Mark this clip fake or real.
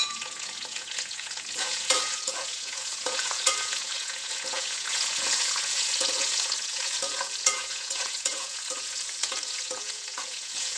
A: fake